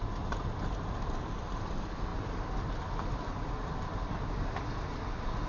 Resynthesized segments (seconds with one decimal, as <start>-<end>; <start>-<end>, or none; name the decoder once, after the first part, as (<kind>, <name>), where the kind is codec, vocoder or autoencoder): none